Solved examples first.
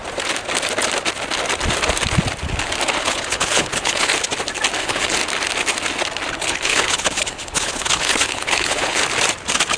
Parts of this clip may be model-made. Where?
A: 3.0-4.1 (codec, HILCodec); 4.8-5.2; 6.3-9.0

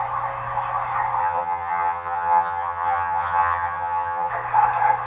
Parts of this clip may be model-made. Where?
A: 1.2-4.3 (vocoder, HiFi-GAN)

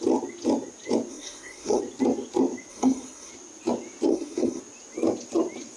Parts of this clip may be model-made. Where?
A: 1.1-1.8 (codec, SNAC); 2.7-3.3; 4.1-4.6